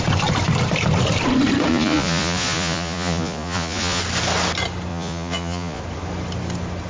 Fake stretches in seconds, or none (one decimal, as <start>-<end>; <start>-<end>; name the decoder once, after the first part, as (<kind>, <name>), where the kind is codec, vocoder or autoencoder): 1.7-4.0 (vocoder, Vocos); 4.9-5.8